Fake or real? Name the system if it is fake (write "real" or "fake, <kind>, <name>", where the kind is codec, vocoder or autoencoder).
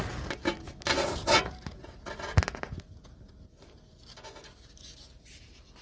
real